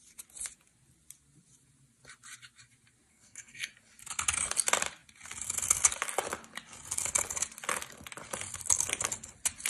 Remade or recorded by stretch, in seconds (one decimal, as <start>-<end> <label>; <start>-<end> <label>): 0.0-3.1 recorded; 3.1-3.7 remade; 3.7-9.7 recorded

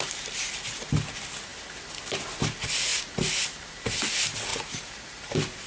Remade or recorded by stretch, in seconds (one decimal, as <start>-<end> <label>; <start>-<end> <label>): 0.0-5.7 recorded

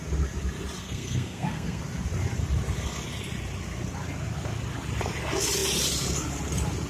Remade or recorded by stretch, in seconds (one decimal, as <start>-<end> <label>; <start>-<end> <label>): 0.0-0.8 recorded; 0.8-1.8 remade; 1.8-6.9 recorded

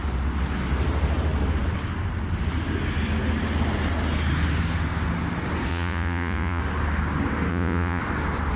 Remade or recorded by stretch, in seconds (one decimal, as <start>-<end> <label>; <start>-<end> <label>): 0.0-5.7 recorded; 5.7-6.6 remade; 6.6-7.5 recorded; 7.5-8.0 remade; 8.0-8.6 recorded

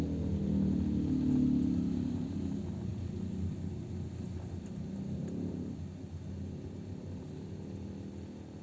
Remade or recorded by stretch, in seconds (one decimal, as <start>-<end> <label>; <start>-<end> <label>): 0.0-8.6 recorded

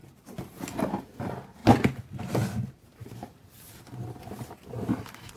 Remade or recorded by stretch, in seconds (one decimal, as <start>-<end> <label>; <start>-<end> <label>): 0.0-5.4 remade

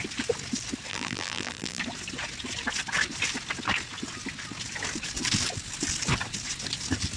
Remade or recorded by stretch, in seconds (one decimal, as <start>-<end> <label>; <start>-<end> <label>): 0.0-0.9 recorded; 0.9-1.8 remade; 1.8-7.2 recorded

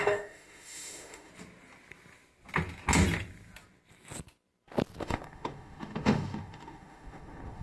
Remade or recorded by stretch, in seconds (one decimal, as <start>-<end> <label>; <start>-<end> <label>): 0.0-1.3 remade; 1.3-5.0 recorded; 5.0-7.6 remade